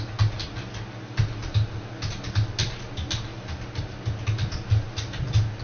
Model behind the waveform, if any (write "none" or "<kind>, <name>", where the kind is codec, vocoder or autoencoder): none